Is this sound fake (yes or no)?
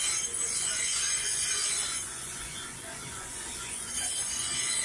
yes